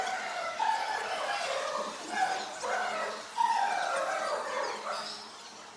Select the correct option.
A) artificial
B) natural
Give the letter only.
B